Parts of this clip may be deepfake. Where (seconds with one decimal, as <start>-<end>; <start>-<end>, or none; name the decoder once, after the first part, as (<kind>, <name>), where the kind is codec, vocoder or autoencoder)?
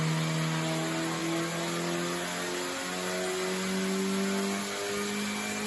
none